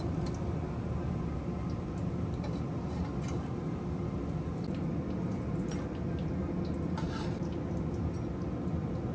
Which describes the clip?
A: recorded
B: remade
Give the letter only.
A